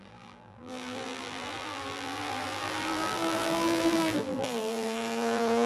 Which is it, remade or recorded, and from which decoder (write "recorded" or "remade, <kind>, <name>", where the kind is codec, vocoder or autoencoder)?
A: remade, vocoder, BigVGAN v2